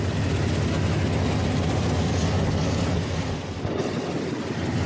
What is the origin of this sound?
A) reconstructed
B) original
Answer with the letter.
B